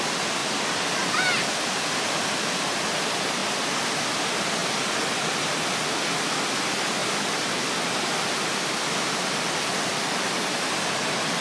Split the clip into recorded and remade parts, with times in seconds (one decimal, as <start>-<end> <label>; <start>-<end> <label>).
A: 0.0-0.4 recorded; 0.4-2.7 remade; 2.7-7.0 recorded; 7.0-10.8 remade; 10.8-11.4 recorded